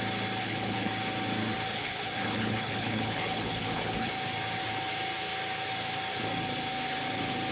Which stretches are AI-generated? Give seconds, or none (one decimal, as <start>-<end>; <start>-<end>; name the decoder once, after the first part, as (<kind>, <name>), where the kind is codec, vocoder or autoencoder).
0.4-0.9 (codec, HILCodec); 1.7-4.1